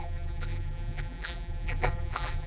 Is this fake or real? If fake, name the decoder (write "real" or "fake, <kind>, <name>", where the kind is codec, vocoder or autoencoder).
fake, vocoder, BigVGAN v2